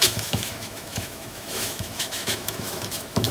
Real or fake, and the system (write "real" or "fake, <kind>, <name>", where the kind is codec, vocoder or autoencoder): fake, autoencoder, DAC-VAE